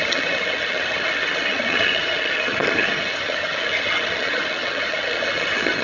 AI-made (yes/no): yes